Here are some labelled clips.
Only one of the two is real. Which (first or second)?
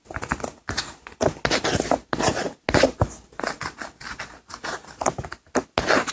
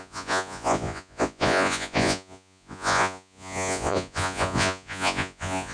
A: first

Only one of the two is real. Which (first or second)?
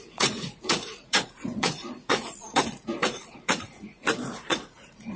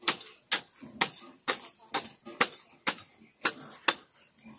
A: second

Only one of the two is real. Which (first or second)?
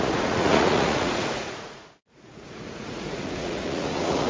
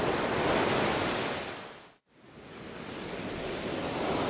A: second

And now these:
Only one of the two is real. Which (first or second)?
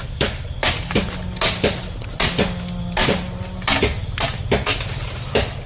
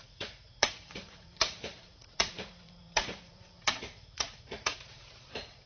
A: first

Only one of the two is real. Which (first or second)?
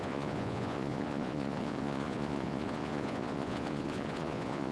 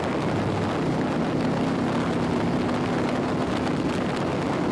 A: second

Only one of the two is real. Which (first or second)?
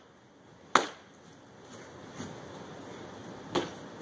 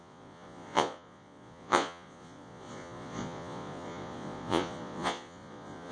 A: first